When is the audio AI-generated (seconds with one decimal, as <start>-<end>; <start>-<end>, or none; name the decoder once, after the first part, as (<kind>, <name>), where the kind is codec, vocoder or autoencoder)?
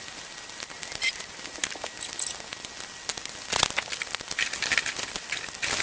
none